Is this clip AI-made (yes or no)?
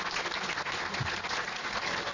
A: no